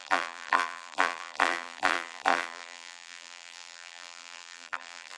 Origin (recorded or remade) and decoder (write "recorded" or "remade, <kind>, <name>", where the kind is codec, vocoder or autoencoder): remade, vocoder, BigVGAN v2